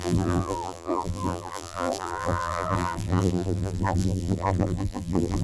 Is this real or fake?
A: fake